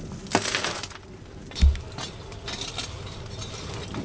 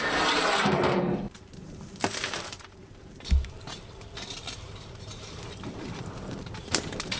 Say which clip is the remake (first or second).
second